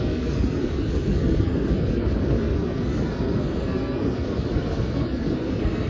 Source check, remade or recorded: remade